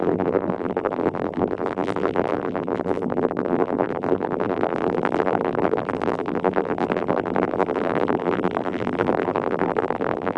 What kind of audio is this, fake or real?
fake